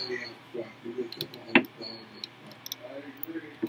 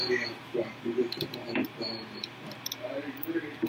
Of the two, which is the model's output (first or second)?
second